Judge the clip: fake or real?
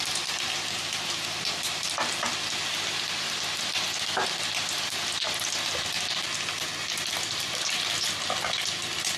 real